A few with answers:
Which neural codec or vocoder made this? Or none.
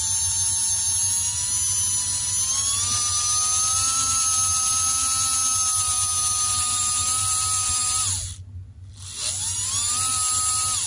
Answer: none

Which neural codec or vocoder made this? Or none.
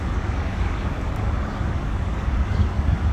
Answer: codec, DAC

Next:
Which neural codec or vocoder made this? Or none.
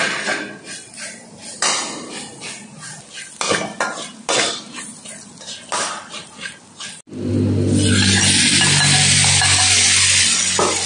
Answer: none